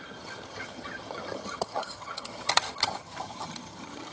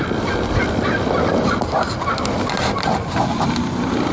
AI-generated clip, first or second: first